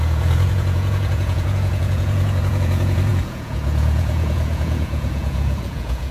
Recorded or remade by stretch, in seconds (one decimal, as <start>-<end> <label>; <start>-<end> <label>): 0.0-6.1 remade